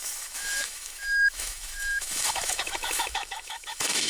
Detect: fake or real fake